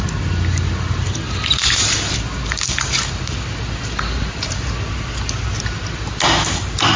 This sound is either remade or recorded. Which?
recorded